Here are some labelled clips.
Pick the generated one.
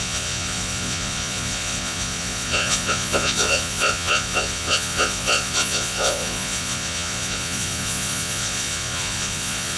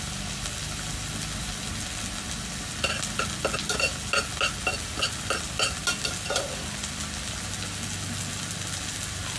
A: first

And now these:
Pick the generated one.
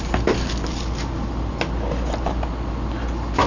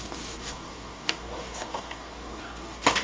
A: second